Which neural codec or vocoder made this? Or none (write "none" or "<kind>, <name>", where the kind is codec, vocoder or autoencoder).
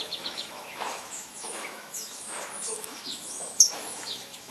autoencoder, DAC-VAE